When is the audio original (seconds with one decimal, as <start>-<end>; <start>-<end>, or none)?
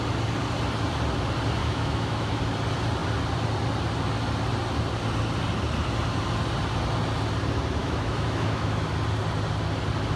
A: 0.0-1.6; 2.4-7.8; 8.9-10.2